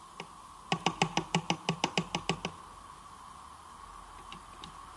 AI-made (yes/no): no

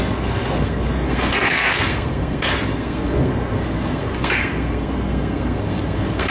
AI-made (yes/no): yes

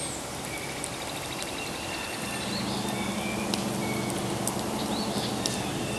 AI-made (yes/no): no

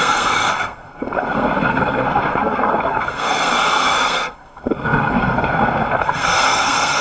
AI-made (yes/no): yes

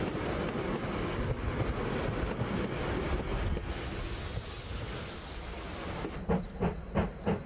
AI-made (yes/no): no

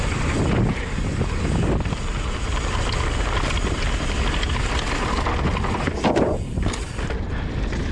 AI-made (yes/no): no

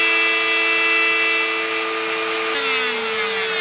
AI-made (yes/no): no